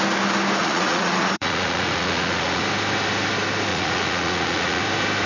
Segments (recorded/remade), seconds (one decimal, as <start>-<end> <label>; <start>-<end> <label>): 0.0-0.6 recorded; 0.6-2.6 remade; 2.6-3.7 recorded; 3.7-4.8 remade; 4.8-5.3 recorded